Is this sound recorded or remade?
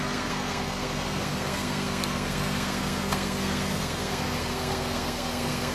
remade